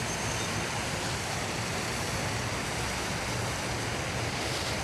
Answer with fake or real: fake